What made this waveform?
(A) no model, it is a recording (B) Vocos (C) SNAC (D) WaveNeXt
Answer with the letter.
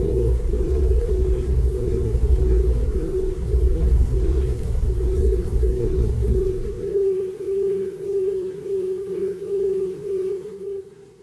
C